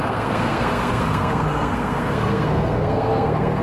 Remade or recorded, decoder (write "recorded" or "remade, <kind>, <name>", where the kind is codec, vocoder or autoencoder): remade, codec, SNAC